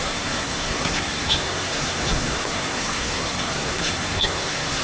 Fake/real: fake